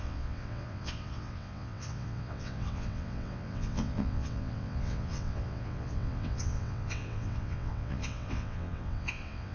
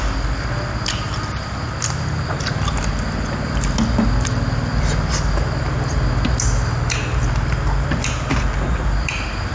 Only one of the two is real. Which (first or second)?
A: second